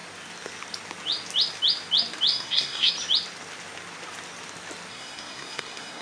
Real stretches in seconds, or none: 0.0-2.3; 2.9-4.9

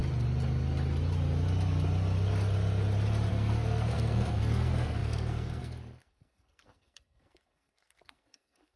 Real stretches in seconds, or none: 0.0-3.3

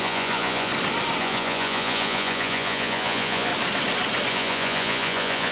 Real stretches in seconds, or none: 0.7-1.2; 3.5-4.3

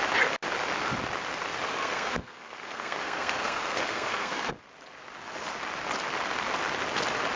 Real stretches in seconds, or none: 0.0-1.7; 4.5-7.4

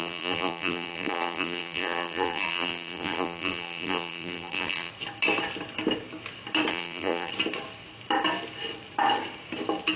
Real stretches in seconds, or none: 4.9-6.7; 7.3-10.0